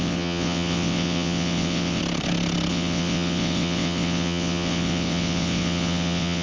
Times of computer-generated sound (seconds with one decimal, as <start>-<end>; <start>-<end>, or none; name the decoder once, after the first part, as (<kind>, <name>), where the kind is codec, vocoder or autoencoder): 0.0-2.0 (vocoder, WaveNeXt); 2.7-6.4